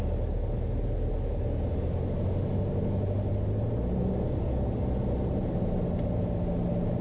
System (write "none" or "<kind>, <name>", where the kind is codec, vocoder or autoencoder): none